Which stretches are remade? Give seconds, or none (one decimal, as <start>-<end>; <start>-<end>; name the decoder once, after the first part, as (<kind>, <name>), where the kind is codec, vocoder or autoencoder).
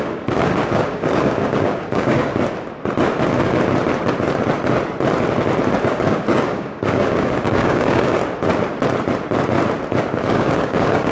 0.0-2.3 (codec, DAC); 5.8-8.2; 10.0-11.1